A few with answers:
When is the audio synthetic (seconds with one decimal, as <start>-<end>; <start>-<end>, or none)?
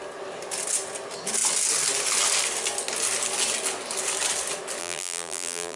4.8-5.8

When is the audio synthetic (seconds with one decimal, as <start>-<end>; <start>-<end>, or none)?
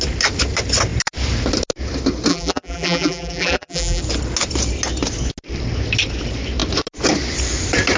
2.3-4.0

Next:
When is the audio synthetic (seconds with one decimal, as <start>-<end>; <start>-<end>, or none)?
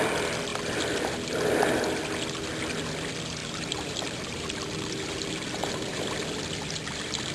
3.4-6.0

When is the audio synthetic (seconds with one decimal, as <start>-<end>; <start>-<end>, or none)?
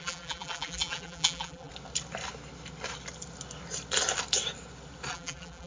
0.0-1.7; 5.1-5.7